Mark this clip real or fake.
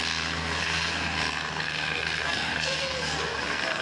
fake